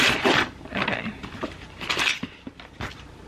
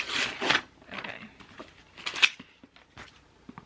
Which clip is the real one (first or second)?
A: second